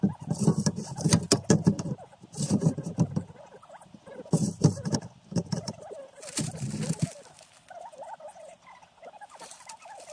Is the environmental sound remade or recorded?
recorded